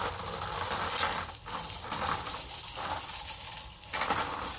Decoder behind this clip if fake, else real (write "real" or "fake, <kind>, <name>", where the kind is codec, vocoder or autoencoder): real